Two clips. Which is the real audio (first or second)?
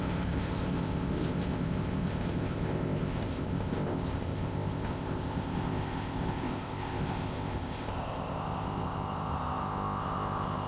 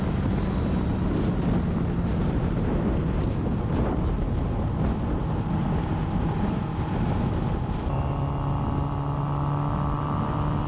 second